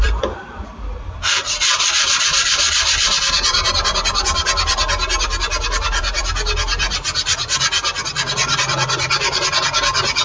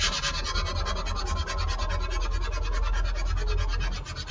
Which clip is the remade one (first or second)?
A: first